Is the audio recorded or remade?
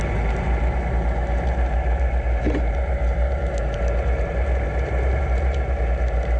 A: remade